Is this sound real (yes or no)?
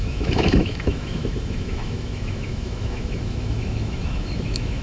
no